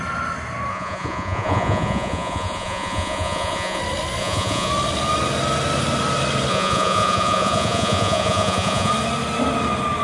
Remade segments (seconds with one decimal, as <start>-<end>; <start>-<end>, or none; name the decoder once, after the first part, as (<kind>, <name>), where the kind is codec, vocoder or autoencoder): 0.7-3.8 (vocoder, Vocos); 4.2-4.7; 6.5-8.9